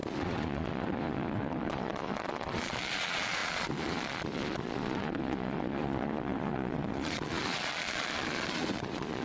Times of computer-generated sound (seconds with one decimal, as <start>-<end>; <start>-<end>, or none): 0.0-9.2